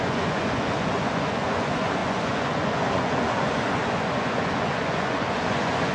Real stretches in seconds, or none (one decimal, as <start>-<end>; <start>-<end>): none